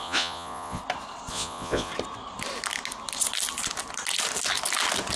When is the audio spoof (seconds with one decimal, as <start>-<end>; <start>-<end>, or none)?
0.0-0.8; 1.3-1.9